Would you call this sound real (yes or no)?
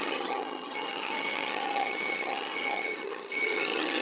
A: no